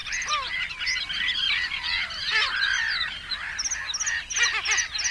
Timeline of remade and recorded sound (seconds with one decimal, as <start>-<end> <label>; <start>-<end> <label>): 0.0-5.1 recorded